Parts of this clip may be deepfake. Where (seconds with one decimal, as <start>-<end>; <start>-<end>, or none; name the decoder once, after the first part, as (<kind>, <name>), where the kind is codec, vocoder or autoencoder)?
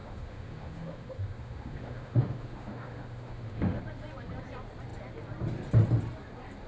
0.0-3.8 (autoencoder, DAC-VAE)